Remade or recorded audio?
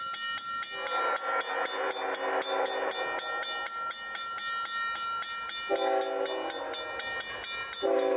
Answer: recorded